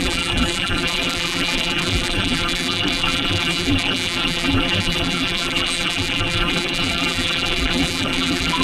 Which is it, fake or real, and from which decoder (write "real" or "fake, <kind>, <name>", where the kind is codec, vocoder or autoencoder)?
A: fake, vocoder, BigVGAN v2